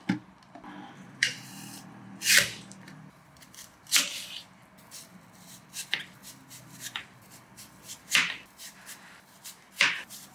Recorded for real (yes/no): no